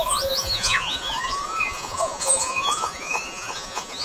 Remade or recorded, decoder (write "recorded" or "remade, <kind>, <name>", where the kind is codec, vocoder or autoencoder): remade, vocoder, Vocos